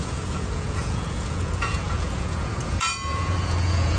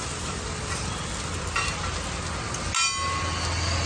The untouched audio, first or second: second